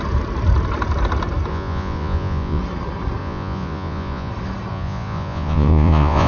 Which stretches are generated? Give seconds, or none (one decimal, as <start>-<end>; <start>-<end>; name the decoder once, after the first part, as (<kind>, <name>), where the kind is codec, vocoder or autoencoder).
1.5-2.6 (vocoder, Vocos); 3.2-4.3; 4.7-6.3